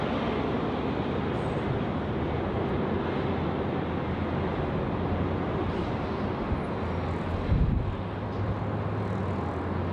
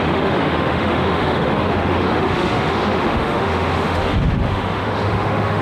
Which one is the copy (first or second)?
second